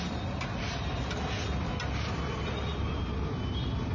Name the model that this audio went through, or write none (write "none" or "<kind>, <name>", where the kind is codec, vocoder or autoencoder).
none